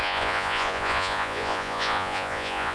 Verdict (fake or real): fake